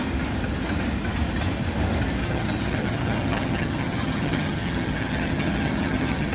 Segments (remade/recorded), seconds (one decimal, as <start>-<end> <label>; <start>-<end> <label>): 0.0-2.2 recorded; 2.2-6.3 remade